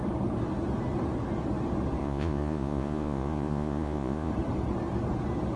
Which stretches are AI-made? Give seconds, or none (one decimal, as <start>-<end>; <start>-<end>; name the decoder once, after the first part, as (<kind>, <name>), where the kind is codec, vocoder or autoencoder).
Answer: 2.0-4.3 (vocoder, Vocos)